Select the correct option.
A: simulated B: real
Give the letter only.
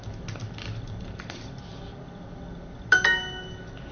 B